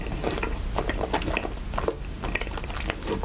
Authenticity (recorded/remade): recorded